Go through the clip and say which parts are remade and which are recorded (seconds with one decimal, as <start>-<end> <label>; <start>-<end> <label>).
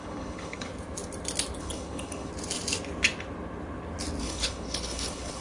0.0-0.7 remade; 0.7-1.6 recorded; 1.6-2.3 remade; 2.3-4.2 recorded; 4.2-5.4 remade